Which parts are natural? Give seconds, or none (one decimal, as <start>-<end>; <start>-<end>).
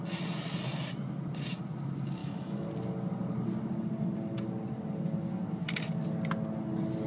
0.0-2.2; 2.7-7.1